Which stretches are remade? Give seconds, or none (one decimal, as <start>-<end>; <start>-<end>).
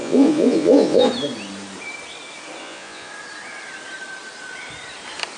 0.0-1.1; 2.6-3.1